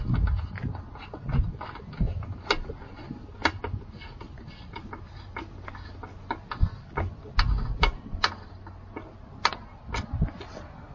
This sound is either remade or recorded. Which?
recorded